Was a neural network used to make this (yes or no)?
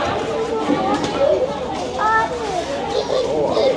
no